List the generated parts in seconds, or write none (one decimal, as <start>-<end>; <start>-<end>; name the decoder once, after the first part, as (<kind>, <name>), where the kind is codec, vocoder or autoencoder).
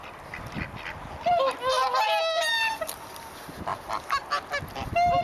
none